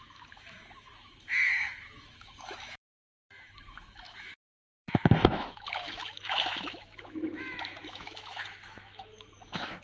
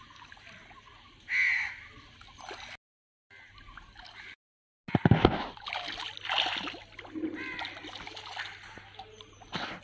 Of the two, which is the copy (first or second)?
first